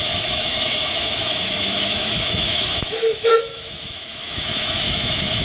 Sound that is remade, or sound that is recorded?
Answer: remade